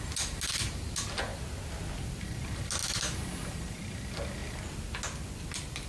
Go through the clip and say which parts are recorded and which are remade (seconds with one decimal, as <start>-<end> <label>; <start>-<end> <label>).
0.0-5.9 recorded